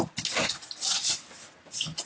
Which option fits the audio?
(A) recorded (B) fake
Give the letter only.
A